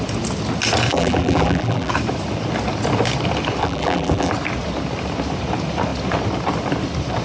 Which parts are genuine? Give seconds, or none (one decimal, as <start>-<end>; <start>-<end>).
0.0-0.9; 1.9-3.6; 4.3-7.2